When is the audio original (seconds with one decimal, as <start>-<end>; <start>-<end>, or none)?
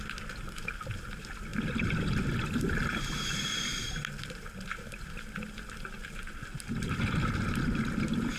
0.0-8.4